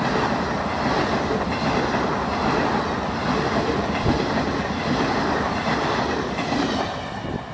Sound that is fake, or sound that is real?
real